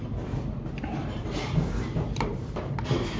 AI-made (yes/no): yes